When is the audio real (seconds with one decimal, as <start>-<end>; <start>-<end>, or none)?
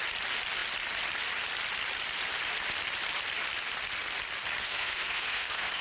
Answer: 0.0-4.6